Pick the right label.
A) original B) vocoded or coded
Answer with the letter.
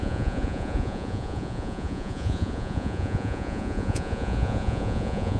B